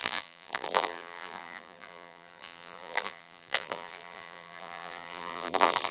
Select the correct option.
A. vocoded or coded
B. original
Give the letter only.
A